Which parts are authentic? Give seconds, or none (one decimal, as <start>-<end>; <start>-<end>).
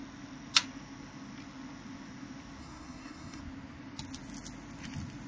0.0-2.6; 3.4-5.3